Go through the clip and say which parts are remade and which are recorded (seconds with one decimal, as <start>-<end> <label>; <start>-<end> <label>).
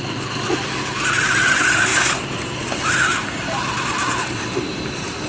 0.0-1.9 recorded; 1.9-2.6 remade; 2.6-5.3 recorded